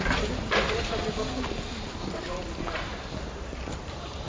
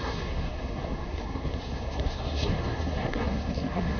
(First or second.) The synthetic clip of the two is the second